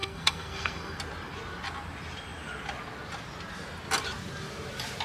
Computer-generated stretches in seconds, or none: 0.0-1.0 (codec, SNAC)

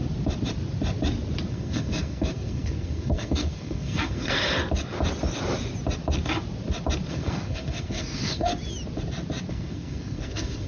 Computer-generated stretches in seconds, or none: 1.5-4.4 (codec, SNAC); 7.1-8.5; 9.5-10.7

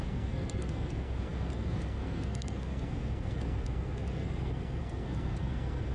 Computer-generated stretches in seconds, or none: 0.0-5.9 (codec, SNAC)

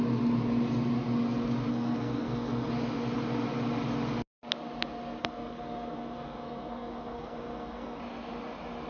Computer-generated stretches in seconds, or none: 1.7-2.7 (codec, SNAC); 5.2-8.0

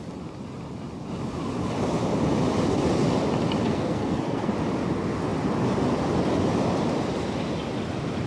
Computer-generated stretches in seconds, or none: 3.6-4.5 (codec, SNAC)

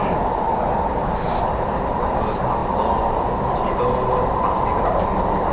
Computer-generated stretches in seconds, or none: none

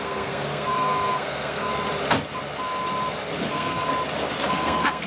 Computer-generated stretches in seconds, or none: 0.0-1.7 (codec, SNAC); 3.5-3.9; 4.5-5.1

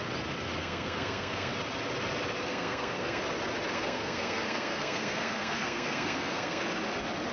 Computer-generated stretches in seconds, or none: 0.6-1.5 (codec, SNAC); 2.5-3.2; 3.7-6.6